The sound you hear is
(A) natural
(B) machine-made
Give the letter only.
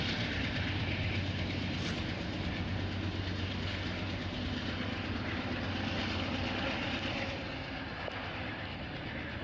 A